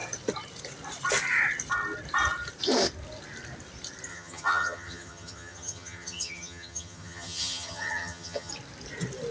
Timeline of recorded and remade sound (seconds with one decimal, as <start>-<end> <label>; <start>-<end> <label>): 0.0-4.1 recorded; 4.1-8.5 remade; 8.5-9.3 recorded